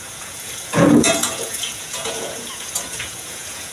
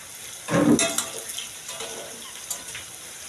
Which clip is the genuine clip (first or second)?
second